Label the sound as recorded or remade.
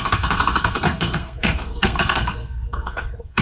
remade